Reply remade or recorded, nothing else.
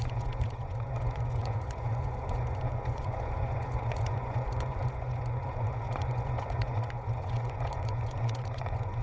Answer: remade